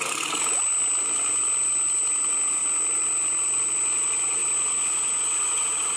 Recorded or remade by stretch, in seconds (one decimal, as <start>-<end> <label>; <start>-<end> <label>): 0.0-6.0 recorded